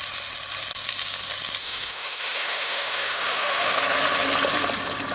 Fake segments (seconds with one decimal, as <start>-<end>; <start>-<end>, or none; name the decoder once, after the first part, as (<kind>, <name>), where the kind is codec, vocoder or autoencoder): 1.6-3.8 (autoencoder, DAC-VAE)

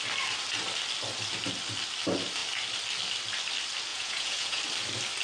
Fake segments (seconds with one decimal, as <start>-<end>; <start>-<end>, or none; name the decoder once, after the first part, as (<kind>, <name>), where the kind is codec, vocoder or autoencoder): 3.9-4.6 (vocoder, Vocos)

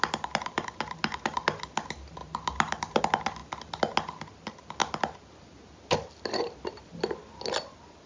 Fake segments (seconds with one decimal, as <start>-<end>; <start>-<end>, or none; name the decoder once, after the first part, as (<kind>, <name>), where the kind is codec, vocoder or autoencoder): 2.2-3.0 (vocoder, BigVGAN v2)

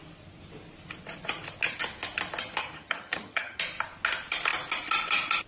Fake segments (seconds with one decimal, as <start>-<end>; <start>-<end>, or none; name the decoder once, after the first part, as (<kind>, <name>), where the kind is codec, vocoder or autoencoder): 2.6-3.6 (vocoder, HiFi-GAN)

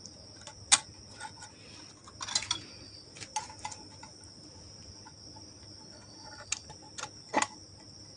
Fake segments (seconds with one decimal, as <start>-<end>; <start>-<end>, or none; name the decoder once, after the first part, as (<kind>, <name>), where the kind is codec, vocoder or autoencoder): none

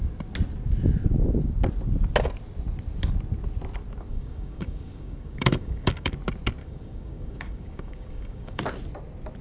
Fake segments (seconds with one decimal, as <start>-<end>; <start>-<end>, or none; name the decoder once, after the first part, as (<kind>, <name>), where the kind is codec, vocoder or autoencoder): 4.1-6.1 (codec, DAC); 6.6-8.6

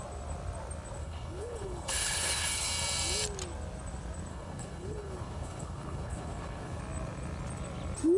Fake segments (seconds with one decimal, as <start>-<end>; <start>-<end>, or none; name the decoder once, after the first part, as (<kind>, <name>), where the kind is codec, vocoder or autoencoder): 1.0-2.7 (codec, HILCodec); 4.3-6.8